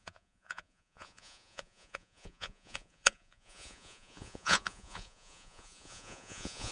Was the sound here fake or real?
fake